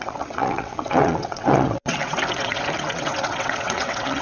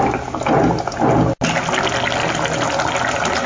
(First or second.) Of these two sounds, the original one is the second